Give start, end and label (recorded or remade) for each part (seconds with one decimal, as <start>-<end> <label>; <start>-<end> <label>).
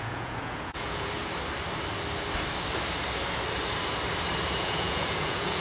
0.0-1.2 remade; 1.2-4.6 recorded; 4.6-5.6 remade